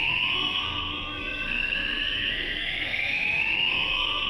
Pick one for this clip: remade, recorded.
remade